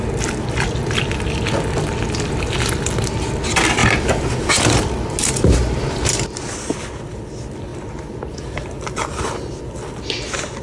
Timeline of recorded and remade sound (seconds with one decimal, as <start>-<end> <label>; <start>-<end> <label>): 0.0-10.6 recorded